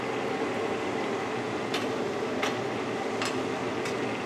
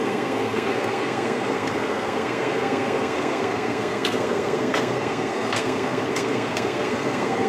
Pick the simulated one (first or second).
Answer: second